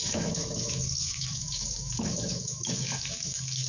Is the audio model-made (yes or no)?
yes